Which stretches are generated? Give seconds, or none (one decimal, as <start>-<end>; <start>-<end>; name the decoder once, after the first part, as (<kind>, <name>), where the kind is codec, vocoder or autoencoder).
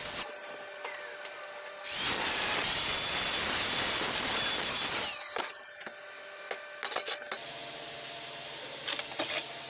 none